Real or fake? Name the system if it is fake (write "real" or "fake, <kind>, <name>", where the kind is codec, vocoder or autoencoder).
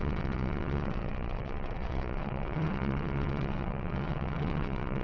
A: fake, vocoder, WaveNeXt